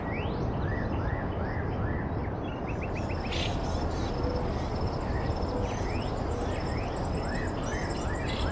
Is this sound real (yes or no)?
yes